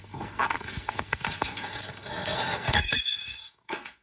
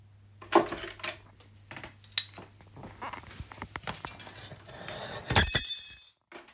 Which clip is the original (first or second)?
second